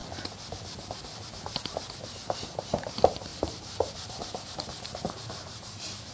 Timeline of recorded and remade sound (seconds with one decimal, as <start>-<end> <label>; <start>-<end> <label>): 0.0-1.7 recorded; 1.7-6.1 remade